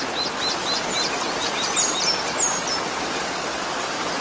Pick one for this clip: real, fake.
real